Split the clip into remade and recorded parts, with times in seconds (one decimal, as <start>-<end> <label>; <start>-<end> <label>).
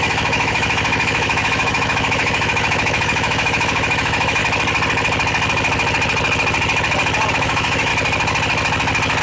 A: 0.0-4.4 remade; 4.4-7.3 recorded; 7.3-7.9 remade; 7.9-9.2 recorded